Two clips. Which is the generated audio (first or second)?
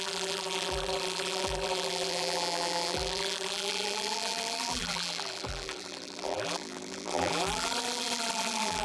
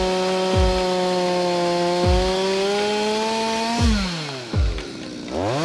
first